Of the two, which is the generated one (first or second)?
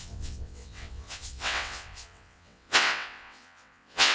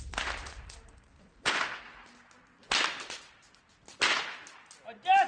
first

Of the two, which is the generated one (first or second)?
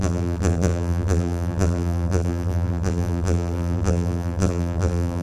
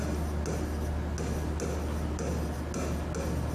first